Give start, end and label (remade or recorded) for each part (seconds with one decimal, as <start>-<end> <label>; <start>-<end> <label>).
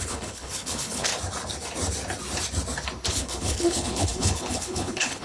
0.0-1.1 remade; 1.1-3.1 recorded; 3.1-5.2 remade